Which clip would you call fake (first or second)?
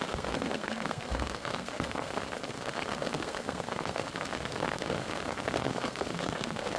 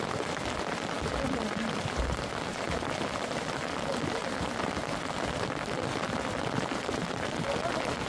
first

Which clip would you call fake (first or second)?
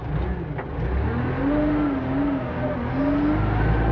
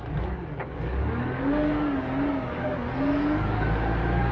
second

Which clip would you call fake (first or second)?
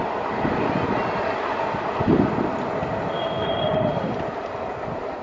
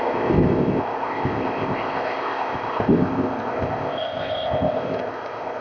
second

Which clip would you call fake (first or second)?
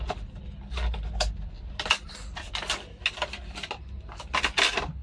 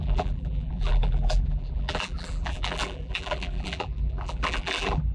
second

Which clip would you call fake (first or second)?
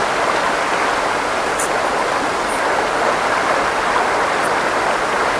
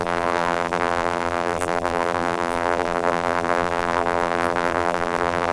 second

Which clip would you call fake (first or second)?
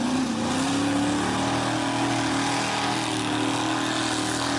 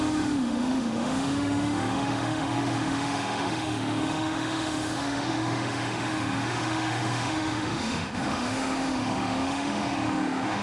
second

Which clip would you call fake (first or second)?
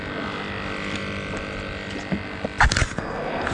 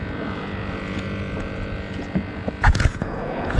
second